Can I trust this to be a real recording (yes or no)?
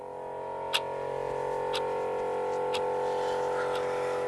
yes